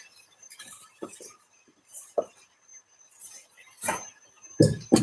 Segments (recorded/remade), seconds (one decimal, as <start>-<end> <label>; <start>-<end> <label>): 0.0-2.7 remade; 2.7-5.0 recorded

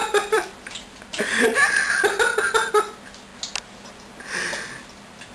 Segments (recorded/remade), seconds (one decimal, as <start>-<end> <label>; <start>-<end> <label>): 0.0-3.3 remade; 3.3-3.9 recorded; 3.9-5.3 remade

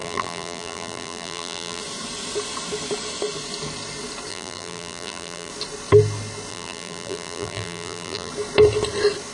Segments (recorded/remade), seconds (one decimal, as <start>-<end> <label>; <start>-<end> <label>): 0.0-1.8 remade; 1.8-4.3 recorded; 4.3-5.5 remade; 5.5-6.5 recorded; 6.5-8.3 remade; 8.3-9.3 recorded